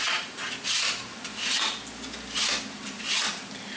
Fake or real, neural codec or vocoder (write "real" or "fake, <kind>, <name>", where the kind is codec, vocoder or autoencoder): real